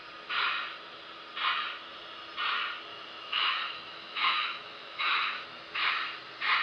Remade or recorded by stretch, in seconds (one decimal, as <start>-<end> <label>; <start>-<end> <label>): 0.0-2.9 recorded; 2.9-5.9 remade; 5.9-6.6 recorded